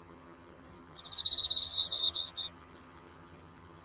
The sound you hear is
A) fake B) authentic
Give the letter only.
A